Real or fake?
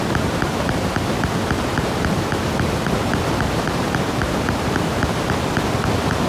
fake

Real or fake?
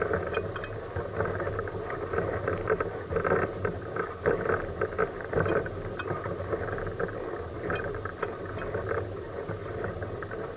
real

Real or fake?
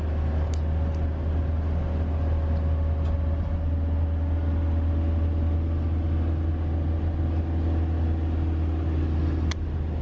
real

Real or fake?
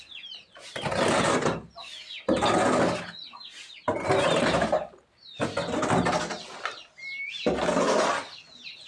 real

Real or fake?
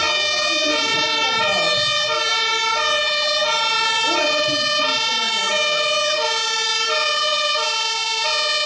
real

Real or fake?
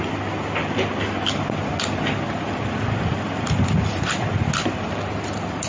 real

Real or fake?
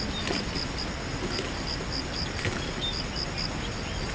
real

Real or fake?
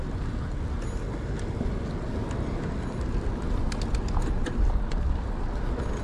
real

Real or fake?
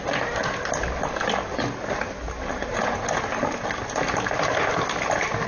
real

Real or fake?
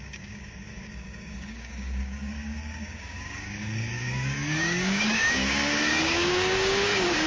fake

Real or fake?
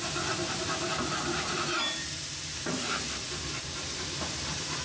fake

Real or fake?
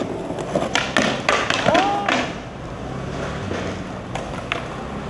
real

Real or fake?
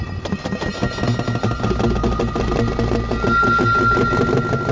real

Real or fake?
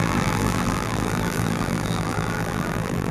fake